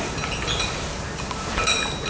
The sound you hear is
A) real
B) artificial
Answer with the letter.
A